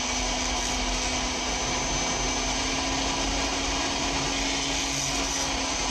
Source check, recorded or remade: recorded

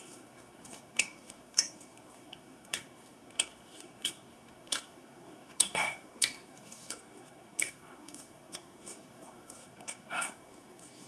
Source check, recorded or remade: remade